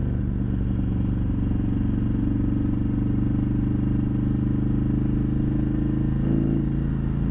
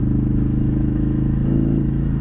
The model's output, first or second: second